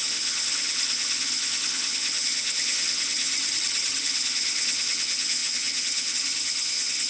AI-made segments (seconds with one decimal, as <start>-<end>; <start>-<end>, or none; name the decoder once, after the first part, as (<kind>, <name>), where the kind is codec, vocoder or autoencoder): 0.0-3.3 (vocoder, HiFi-GAN); 4.0-7.1